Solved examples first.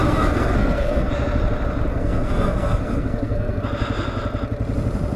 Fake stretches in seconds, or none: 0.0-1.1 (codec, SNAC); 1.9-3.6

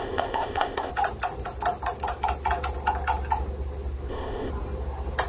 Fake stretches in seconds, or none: 0.0-0.9 (codec, ZipCodec); 4.1-4.5

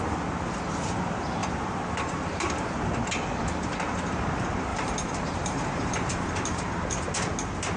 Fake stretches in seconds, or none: 1.4-2.9 (vocoder, BigVGAN v2); 4.7-6.8

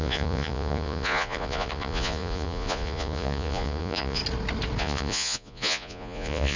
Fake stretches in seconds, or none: 0.0-4.2 (vocoder, Vocos); 4.8-6.6

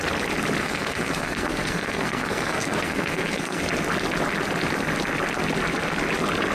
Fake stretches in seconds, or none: 0.6-3.6 (codec, SNAC)

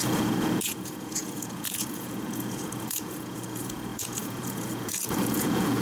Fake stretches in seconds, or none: 0.0-5.8 (vocoder, Vocos)

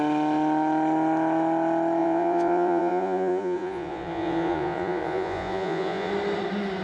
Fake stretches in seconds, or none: 2.0-6.1 (vocoder, Vocos)